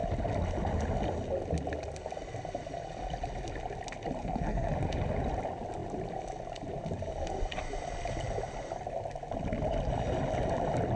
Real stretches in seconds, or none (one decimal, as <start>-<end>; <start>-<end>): 0.0-4.2; 4.7-11.0